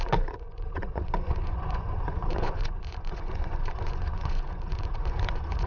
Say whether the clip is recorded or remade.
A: remade